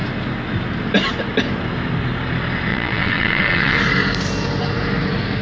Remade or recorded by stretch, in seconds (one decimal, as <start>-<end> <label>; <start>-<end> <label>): 0.0-2.7 recorded; 2.7-3.8 remade; 3.8-5.4 recorded